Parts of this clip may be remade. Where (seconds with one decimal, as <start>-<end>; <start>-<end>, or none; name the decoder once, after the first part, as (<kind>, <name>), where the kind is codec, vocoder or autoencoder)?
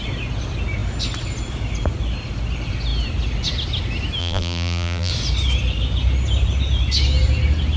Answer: 4.2-5.1 (vocoder, BigVGAN v2)